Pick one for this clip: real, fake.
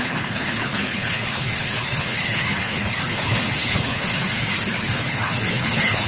fake